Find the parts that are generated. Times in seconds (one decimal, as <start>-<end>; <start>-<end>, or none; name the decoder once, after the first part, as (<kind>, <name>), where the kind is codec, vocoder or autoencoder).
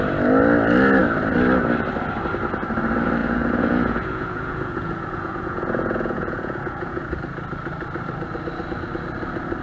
3.2-7.2 (vocoder, Vocos)